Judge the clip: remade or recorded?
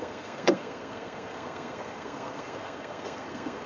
remade